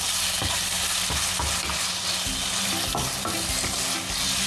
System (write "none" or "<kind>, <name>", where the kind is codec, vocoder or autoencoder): none